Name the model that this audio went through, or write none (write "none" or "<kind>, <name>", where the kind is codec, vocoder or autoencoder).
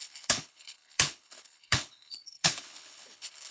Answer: codec, HILCodec